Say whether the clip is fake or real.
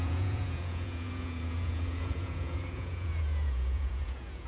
fake